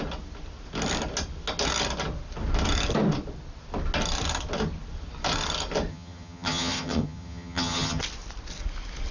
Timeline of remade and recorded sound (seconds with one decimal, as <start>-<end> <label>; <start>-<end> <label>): 0.0-5.9 recorded; 5.9-8.0 remade; 8.0-9.1 recorded